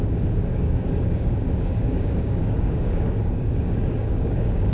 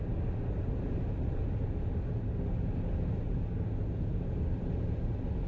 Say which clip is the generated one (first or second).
first